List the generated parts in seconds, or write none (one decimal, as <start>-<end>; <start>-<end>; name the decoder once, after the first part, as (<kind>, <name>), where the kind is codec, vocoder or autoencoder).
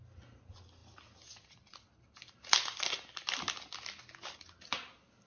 none